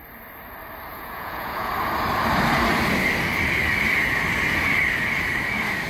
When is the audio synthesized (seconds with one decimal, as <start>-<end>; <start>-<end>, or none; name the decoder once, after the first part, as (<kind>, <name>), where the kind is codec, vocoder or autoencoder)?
0.9-1.7 (vocoder, Vocos)